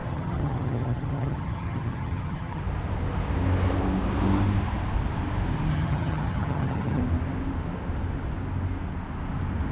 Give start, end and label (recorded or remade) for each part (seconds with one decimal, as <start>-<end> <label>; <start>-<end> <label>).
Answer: 0.0-2.6 remade; 2.6-5.7 recorded; 5.7-7.0 remade; 7.0-9.7 recorded